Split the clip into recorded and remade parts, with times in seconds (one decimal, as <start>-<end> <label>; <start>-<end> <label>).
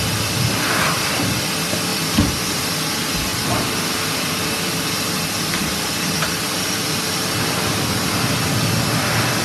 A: 0.0-1.9 recorded; 1.9-2.8 remade; 2.8-3.3 recorded; 3.3-4.8 remade; 4.8-5.6 recorded; 5.6-8.1 remade; 8.1-9.4 recorded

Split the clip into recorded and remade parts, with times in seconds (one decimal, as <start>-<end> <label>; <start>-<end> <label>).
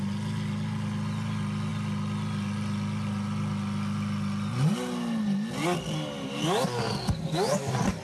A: 0.0-8.0 recorded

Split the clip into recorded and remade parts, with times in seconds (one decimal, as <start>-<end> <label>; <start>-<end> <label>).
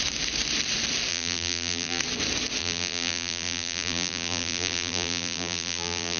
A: 0.0-1.1 recorded; 1.1-2.0 remade; 2.0-2.6 recorded; 2.6-6.2 remade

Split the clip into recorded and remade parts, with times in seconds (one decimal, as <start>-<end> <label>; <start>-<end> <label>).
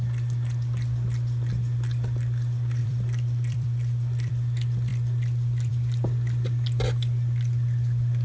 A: 0.0-2.8 recorded; 2.8-4.3 remade; 4.3-8.2 recorded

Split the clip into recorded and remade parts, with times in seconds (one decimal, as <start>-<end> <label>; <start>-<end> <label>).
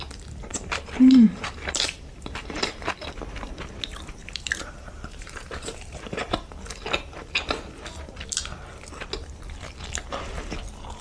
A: 0.0-0.5 recorded; 0.5-2.9 remade; 2.9-4.2 recorded; 4.2-6.4 remade; 6.4-11.0 recorded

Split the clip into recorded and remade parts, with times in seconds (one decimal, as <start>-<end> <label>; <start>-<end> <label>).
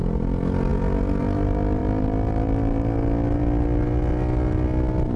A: 0.0-5.2 recorded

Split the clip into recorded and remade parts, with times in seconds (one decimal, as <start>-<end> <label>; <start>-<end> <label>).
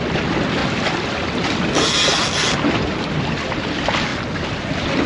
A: 0.0-4.1 remade; 4.1-5.1 recorded